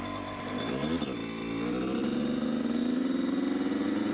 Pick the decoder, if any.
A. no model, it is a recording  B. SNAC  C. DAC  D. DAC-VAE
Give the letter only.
A